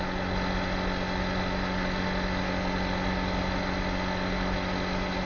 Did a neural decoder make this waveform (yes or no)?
no